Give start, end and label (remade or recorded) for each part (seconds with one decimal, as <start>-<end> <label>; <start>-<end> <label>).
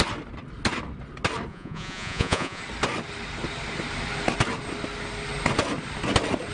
0.0-1.5 recorded; 1.5-2.6 remade; 2.6-6.5 recorded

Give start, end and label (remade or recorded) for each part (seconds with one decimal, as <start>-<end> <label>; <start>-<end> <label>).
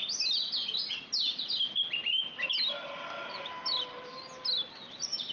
0.0-5.3 recorded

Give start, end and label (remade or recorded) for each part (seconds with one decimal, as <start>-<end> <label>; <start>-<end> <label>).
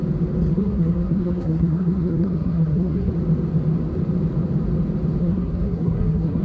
0.0-0.5 recorded; 0.5-3.1 remade; 3.1-5.2 recorded; 5.2-6.4 remade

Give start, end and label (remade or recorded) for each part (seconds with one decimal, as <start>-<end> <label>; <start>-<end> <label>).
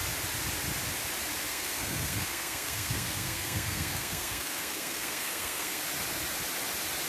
0.0-1.5 recorded; 1.5-5.8 remade; 5.8-7.1 recorded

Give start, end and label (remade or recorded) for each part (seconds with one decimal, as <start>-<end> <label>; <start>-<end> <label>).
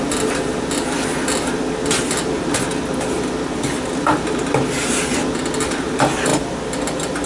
0.0-7.3 recorded